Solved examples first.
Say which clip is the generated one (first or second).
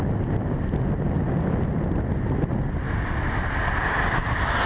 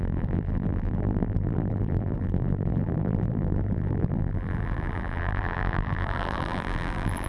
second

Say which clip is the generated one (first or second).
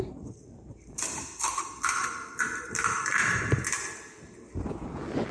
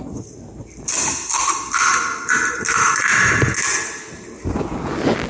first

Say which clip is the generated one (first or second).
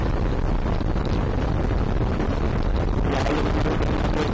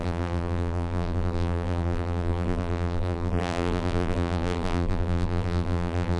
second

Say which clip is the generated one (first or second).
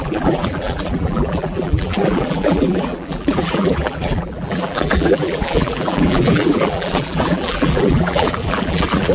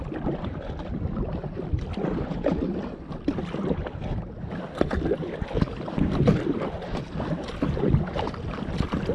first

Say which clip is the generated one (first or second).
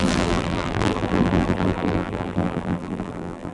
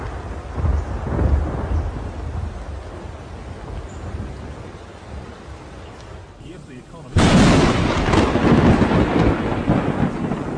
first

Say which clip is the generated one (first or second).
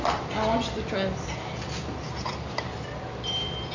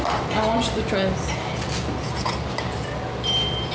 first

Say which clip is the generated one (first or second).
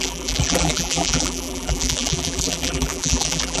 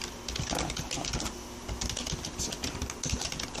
first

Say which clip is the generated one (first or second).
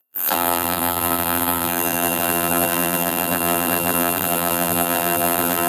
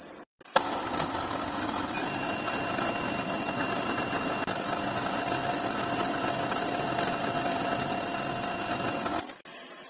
first